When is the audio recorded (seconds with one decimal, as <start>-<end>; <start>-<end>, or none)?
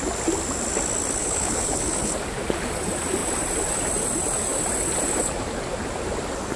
0.0-1.2; 2.1-6.6